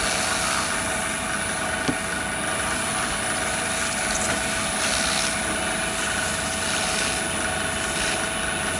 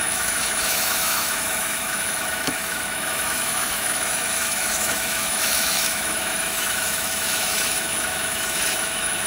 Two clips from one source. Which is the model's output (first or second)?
second